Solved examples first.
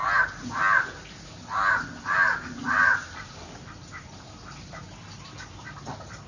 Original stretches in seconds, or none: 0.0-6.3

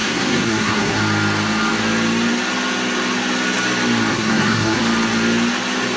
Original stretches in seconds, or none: 1.0-4.1; 4.8-6.0

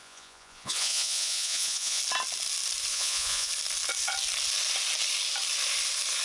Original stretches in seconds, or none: 2.0-2.9; 3.5-6.2